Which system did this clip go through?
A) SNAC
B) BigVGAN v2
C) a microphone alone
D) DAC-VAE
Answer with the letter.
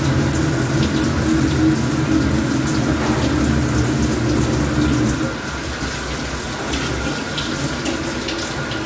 C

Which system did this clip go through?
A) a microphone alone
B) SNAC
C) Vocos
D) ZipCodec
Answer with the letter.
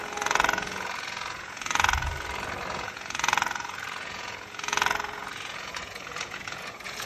C